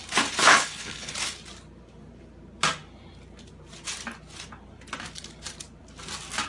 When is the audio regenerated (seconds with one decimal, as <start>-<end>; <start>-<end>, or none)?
0.4-1.1

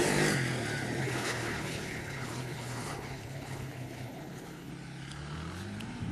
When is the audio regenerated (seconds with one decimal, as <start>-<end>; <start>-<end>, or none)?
1.0-4.7